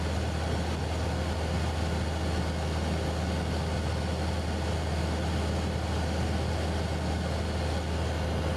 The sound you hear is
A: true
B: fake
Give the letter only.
A